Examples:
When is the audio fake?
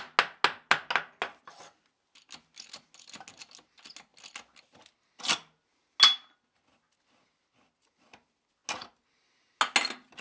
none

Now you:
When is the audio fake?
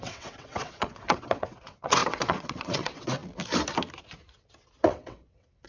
0.0-3.2 (vocoder, WaveNeXt); 4.8-5.7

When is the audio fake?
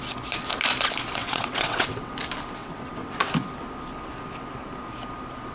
1.2-2.1 (vocoder, WaveNeXt); 2.6-3.3